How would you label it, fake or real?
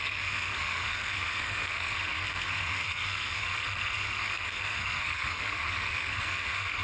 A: fake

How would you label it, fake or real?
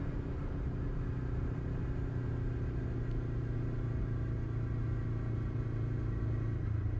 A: real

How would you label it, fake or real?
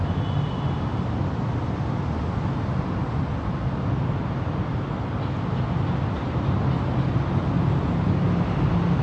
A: real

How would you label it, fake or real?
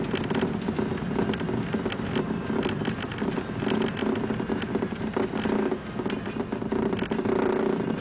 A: real